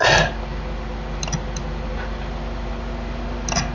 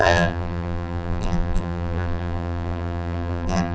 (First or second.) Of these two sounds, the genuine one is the first